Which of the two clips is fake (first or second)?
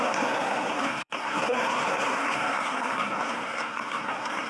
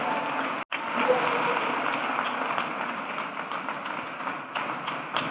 first